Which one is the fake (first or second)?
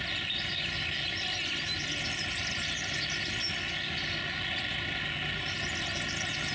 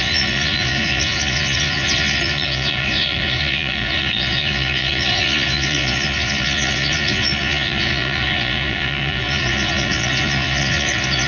second